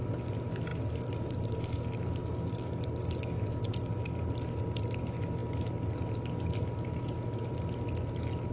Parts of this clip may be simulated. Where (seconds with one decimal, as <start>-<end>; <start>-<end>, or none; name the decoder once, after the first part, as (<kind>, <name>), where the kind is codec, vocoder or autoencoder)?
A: none